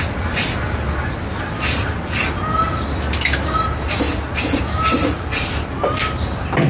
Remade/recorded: recorded